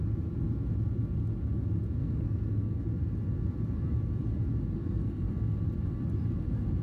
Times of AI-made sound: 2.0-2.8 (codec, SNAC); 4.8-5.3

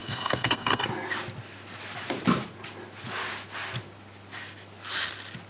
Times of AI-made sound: 0.0-0.8 (codec, SNAC)

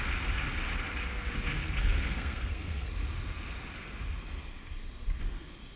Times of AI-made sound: 1.6-2.9 (codec, SNAC)